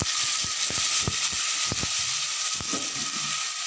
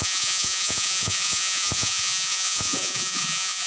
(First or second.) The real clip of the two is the first